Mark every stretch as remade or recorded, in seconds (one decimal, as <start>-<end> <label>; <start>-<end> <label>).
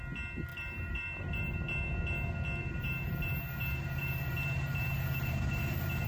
0.0-0.5 recorded; 0.5-1.4 remade; 1.4-2.6 recorded; 2.6-6.1 remade